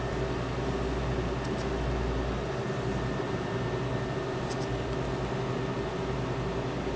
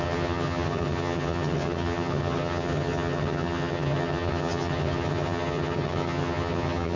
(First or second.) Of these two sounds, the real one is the first